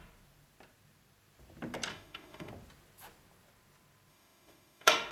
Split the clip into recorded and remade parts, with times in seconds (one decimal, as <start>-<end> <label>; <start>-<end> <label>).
0.0-1.9 recorded; 1.9-2.5 remade; 2.5-4.1 recorded; 4.1-5.1 remade